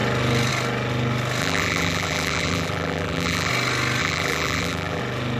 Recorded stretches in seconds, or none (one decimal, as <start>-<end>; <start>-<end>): 0.0-1.4; 3.5-4.0; 5.0-5.4